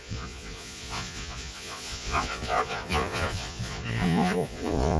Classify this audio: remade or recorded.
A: remade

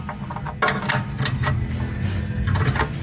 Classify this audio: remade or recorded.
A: recorded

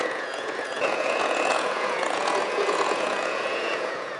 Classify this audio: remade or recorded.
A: remade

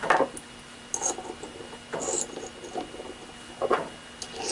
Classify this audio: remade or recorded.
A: recorded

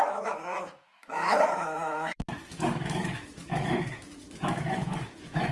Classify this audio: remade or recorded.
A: remade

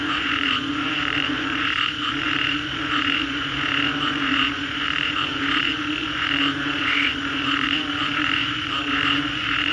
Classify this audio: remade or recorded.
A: remade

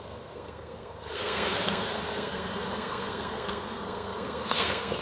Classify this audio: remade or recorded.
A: remade